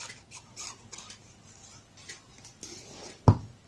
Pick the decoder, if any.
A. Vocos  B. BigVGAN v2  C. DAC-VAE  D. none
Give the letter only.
D